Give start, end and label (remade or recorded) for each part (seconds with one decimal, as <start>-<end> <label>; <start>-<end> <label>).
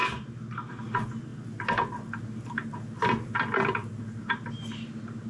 0.0-5.3 recorded